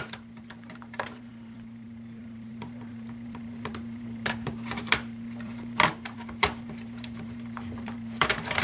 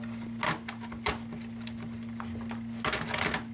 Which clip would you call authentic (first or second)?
second